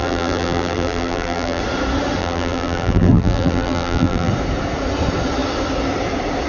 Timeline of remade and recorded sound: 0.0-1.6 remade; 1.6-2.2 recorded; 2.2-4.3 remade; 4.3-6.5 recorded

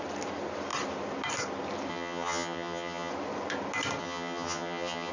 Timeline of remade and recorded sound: 0.0-1.9 recorded; 1.9-3.1 remade; 3.1-4.0 recorded; 4.0-5.1 remade